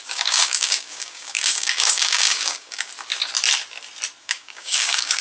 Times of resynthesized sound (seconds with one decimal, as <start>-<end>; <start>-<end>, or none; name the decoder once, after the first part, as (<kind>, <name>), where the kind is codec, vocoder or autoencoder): 0.0-2.9 (codec, DAC); 4.2-5.2